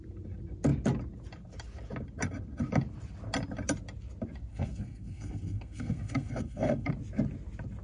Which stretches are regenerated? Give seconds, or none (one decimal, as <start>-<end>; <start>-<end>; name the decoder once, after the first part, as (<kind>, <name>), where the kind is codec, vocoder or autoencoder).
4.5-6.9 (codec, SNAC)